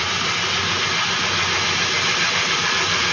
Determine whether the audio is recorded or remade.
remade